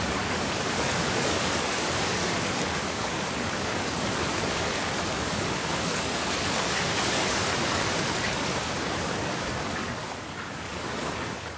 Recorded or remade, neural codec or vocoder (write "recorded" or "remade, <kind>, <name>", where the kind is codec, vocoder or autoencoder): remade, codec, DAC